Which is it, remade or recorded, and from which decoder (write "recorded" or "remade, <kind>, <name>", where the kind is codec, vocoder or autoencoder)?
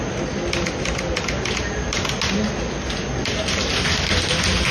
recorded